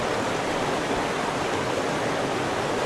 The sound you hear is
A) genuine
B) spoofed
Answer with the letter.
A